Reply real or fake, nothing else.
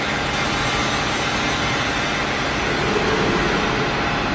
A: real